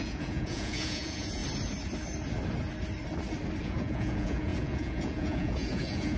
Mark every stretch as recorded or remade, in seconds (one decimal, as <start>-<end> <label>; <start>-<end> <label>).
0.0-1.4 remade; 1.4-3.6 recorded; 3.6-6.2 remade